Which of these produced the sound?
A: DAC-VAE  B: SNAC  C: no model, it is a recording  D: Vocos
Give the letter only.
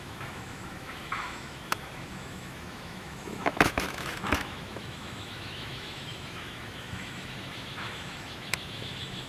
A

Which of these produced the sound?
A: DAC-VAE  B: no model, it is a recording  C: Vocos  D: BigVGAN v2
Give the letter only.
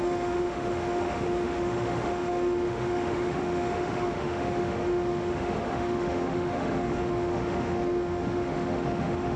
A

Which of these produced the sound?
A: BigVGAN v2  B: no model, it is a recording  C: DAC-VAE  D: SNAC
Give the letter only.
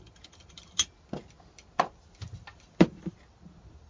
B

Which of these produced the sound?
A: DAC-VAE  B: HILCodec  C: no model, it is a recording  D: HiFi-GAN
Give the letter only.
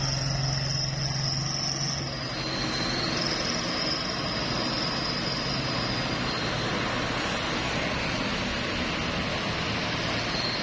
C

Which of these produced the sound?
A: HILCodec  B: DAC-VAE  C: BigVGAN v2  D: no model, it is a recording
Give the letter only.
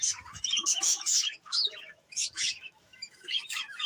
B